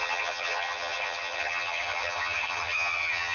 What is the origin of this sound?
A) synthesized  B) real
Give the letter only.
A